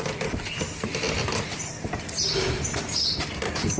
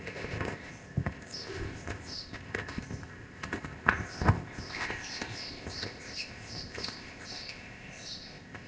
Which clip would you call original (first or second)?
first